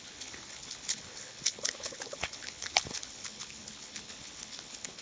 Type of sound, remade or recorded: remade